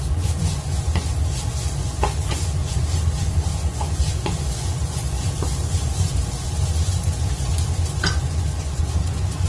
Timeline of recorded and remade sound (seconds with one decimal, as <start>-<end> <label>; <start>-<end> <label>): 0.0-9.5 remade